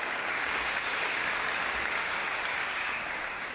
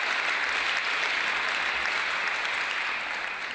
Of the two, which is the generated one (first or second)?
first